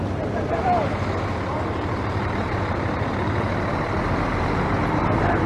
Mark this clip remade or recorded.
remade